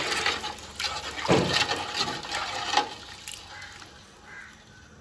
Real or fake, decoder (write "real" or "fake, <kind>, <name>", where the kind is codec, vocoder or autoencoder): real